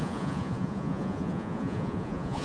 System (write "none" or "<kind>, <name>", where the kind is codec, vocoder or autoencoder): vocoder, Vocos